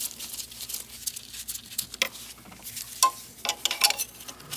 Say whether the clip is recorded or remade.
recorded